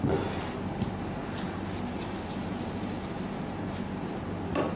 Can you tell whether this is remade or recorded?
recorded